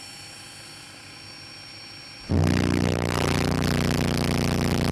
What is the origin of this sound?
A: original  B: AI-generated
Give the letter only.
A